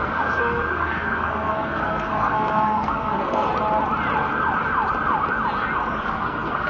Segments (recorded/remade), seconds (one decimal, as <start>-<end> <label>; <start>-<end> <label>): 0.0-3.5 remade; 3.5-5.9 recorded; 5.9-6.7 remade